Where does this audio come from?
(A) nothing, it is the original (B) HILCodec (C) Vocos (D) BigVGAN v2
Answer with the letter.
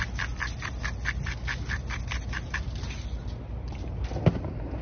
A